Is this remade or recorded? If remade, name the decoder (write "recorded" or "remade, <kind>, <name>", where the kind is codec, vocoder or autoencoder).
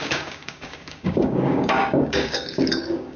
remade, codec, DAC